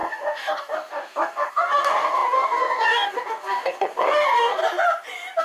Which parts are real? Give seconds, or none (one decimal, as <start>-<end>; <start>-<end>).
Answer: 4.6-5.4